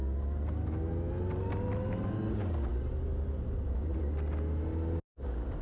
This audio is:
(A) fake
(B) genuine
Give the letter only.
B